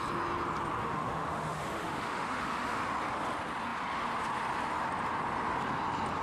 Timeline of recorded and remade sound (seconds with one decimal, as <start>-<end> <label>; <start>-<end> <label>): 0.0-0.8 recorded; 0.8-2.8 remade; 2.8-6.2 recorded